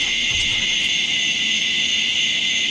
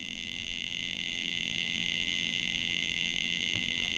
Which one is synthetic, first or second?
second